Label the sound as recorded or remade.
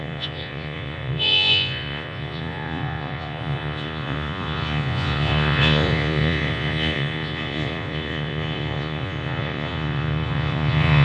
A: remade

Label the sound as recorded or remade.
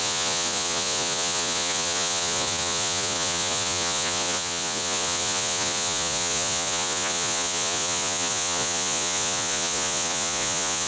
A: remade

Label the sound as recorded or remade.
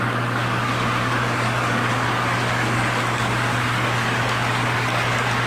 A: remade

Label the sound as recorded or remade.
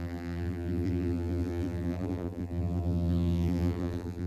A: remade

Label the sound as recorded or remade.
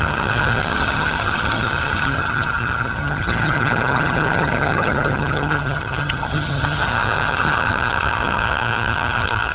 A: remade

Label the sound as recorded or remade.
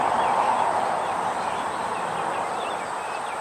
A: recorded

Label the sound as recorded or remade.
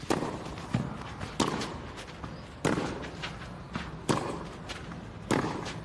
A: recorded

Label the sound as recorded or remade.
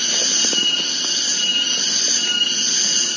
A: recorded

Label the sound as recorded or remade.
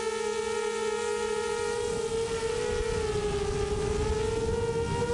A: recorded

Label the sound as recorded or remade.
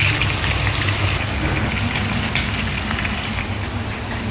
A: recorded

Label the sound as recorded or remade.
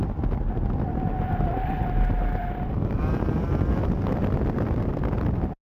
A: recorded